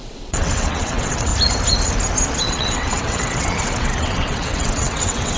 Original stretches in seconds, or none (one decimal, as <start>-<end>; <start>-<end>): 1.3-2.5